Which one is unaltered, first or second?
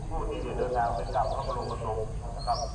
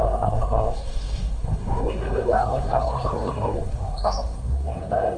first